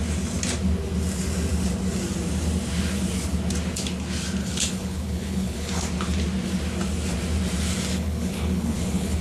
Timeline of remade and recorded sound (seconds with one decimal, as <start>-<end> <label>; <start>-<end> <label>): 0.0-4.4 recorded; 4.4-5.8 remade; 5.8-7.9 recorded; 7.9-9.2 remade